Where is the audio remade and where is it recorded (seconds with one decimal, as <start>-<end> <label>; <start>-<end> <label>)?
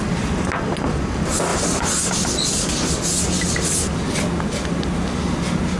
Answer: 0.0-5.8 recorded